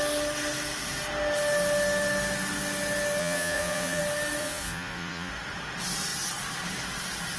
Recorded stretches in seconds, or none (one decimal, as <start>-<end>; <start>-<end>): 0.0-3.2; 4.0-4.4; 5.3-7.4